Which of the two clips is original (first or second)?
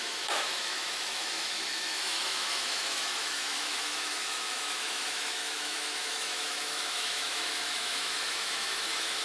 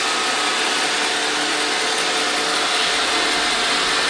second